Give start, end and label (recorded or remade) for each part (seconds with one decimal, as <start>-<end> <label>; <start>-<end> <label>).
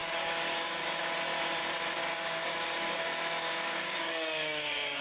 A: 0.0-0.8 remade; 0.8-2.0 recorded; 2.0-5.0 remade